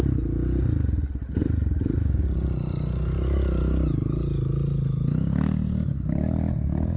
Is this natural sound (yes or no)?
yes